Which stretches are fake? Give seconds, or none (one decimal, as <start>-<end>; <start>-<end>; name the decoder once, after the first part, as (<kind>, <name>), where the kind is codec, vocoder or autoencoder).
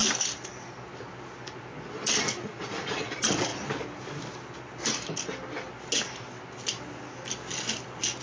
2.4-3.1 (vocoder, Vocos)